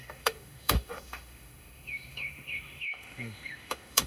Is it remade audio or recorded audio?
remade